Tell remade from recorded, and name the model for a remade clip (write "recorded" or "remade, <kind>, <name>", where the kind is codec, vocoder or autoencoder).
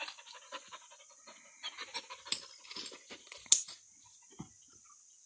recorded